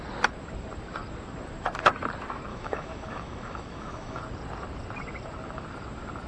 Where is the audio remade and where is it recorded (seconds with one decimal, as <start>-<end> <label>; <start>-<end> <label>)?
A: 0.0-2.5 recorded; 2.5-4.2 remade; 4.2-6.3 recorded